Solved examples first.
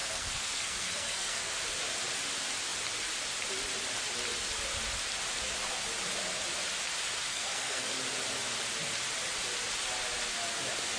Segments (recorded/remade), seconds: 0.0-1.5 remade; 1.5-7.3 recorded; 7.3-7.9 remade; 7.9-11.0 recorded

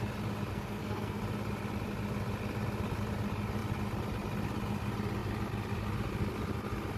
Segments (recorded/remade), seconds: 0.0-0.5 recorded; 0.5-1.2 remade; 1.2-7.0 recorded